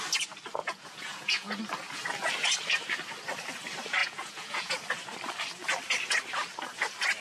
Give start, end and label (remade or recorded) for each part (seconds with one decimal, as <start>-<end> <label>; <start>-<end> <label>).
0.0-0.6 recorded; 0.6-1.6 remade; 1.6-4.0 recorded; 4.0-4.7 remade; 4.7-7.2 recorded